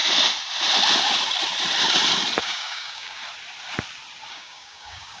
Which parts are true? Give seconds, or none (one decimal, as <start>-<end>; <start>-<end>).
0.0-2.4; 3.2-4.3